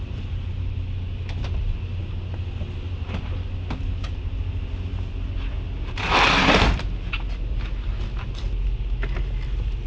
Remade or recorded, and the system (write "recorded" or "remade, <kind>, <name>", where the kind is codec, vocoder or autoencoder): recorded